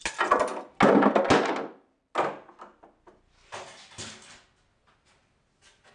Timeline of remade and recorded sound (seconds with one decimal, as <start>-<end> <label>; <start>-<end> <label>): 0.0-5.9 recorded